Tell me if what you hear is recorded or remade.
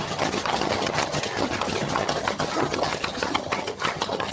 remade